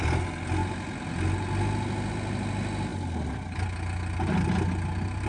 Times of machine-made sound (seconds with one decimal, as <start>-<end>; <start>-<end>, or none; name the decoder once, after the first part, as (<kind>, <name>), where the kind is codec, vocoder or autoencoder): none